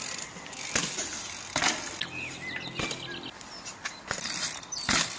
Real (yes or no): yes